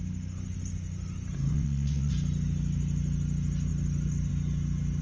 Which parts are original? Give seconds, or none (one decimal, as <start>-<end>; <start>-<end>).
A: 0.0-1.5; 2.1-5.0